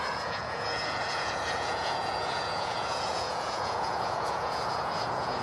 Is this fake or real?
fake